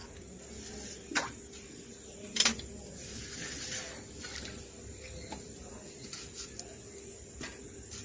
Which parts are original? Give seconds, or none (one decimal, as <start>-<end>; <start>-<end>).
0.0-8.0